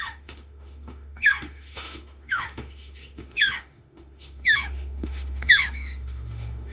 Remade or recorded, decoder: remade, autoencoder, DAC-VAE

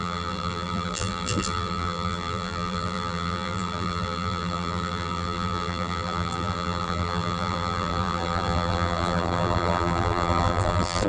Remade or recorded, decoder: remade, vocoder, BigVGAN v2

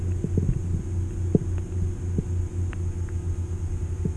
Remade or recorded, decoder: recorded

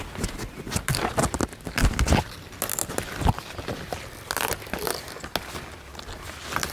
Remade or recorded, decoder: recorded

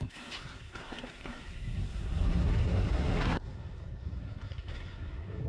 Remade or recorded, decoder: remade, codec, SNAC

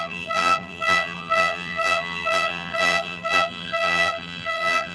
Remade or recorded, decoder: remade, vocoder, BigVGAN v2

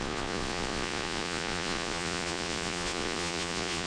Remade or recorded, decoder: remade, vocoder, Vocos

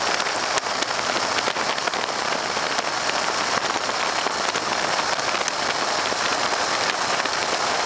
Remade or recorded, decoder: recorded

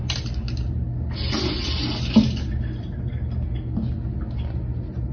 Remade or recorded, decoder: recorded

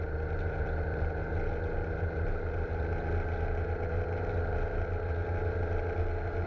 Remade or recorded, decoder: recorded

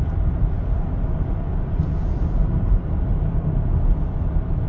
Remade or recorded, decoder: recorded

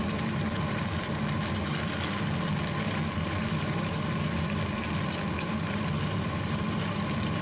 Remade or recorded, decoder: remade, vocoder, BigVGAN v2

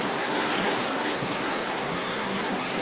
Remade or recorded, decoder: remade, codec, SNAC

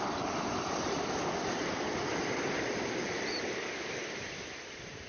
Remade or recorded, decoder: remade, vocoder, BigVGAN v2